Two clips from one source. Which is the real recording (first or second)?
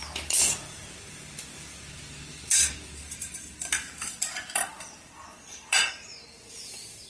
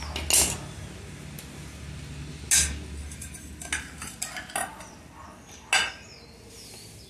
second